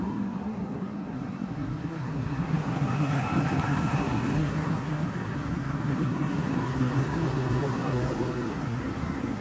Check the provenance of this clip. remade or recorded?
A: remade